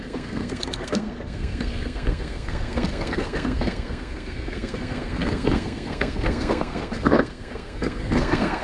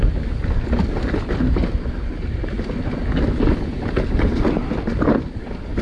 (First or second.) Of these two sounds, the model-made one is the first